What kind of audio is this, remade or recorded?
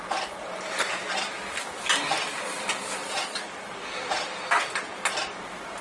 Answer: recorded